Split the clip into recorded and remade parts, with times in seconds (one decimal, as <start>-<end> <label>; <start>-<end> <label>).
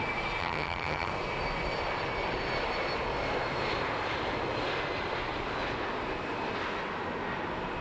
0.0-0.4 recorded; 0.4-1.1 remade; 1.1-7.8 recorded